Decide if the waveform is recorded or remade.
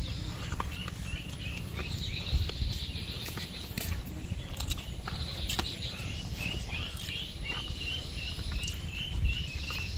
remade